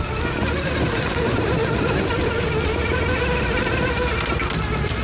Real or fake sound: real